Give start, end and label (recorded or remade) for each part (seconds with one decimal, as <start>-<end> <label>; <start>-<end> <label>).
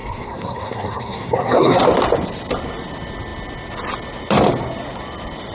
0.0-1.8 remade; 1.8-5.5 recorded